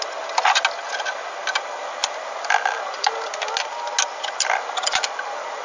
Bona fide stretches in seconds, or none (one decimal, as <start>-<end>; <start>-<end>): 0.0-5.6